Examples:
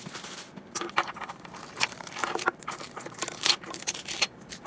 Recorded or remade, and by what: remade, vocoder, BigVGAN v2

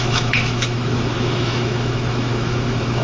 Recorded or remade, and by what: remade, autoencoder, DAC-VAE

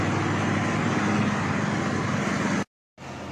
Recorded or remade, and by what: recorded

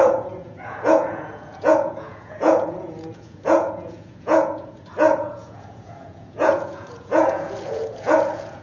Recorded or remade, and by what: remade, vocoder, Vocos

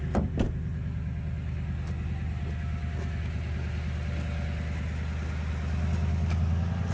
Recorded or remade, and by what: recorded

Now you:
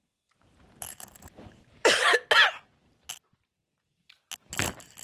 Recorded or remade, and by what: recorded